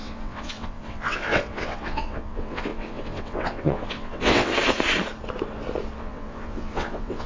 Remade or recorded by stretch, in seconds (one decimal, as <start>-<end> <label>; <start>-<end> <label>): 0.0-4.5 remade; 4.5-6.0 recorded; 6.0-7.3 remade